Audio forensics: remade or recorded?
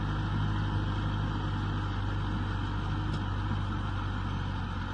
recorded